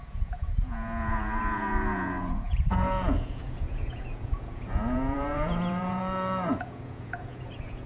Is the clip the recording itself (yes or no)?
no